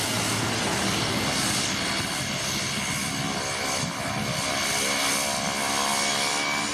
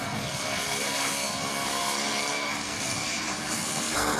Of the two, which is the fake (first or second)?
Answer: second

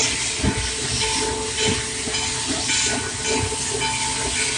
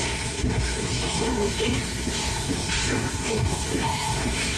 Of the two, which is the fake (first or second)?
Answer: second